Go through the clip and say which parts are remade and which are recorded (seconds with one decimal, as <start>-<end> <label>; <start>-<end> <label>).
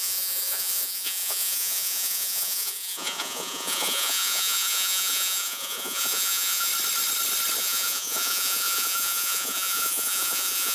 0.0-6.7 remade; 6.7-7.6 recorded; 7.6-10.7 remade